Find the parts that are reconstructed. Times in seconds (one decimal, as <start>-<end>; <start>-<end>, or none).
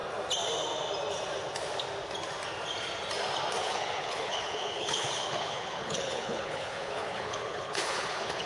3.6-8.5